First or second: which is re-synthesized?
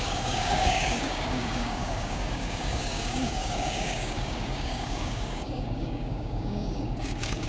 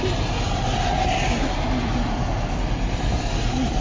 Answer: first